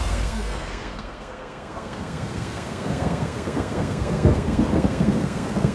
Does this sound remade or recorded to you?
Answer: remade